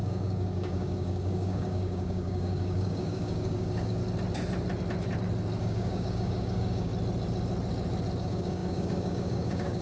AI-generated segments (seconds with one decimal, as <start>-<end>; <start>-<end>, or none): 0.0-4.0; 5.6-6.9; 8.2-9.8